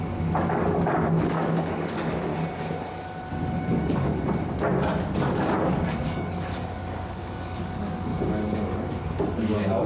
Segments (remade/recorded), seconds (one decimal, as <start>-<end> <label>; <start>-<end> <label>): 0.0-2.3 remade; 2.3-3.6 recorded; 3.6-4.1 remade; 4.1-5.1 recorded; 5.1-8.1 remade; 8.1-9.2 recorded; 9.2-9.9 remade